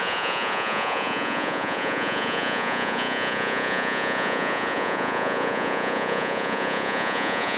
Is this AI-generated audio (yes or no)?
yes